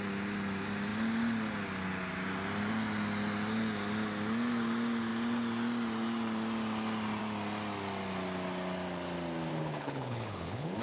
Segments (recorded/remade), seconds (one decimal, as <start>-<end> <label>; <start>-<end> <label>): 0.0-9.5 recorded; 9.5-10.8 remade